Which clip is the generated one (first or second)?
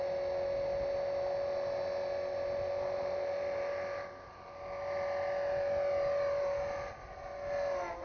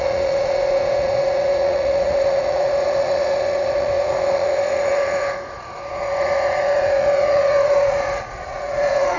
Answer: second